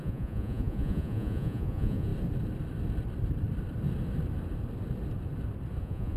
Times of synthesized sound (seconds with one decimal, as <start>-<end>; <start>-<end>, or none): 0.0-2.1; 5.8-6.2